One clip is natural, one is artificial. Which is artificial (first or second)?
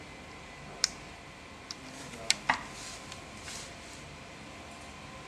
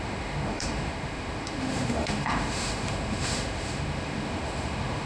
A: second